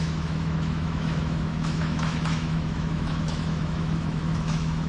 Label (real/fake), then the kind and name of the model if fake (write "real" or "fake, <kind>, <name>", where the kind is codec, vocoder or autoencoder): fake, autoencoder, DAC-VAE